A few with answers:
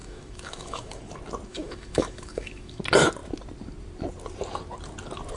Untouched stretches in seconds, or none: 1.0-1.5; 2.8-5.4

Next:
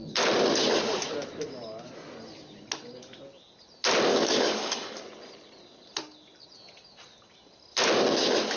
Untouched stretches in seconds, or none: 0.0-4.1; 5.0-8.6

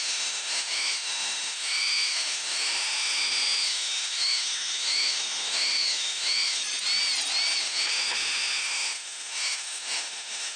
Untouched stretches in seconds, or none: 6.6-7.6

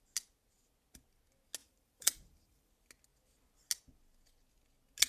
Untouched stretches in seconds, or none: 0.0-1.6; 2.7-5.1

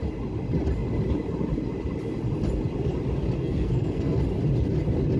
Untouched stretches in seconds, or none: 0.0-3.4; 4.2-5.2